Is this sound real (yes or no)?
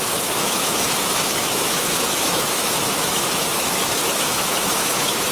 no